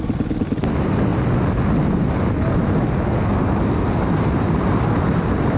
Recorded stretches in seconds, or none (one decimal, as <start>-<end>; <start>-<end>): 1.1-4.5